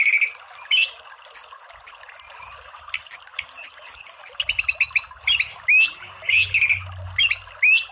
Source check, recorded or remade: recorded